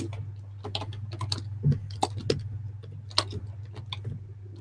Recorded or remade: recorded